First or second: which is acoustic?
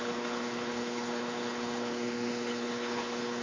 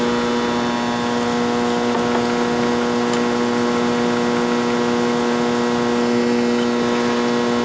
second